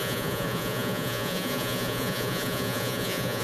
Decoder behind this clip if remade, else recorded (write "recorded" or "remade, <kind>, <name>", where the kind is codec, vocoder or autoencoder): remade, vocoder, Vocos